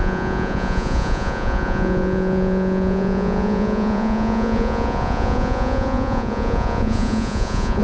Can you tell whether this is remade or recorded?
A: remade